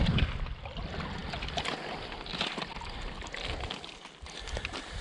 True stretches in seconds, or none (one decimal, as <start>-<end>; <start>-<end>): 0.0-5.0